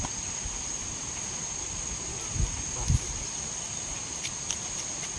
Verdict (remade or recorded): remade